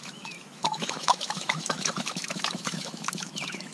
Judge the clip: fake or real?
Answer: fake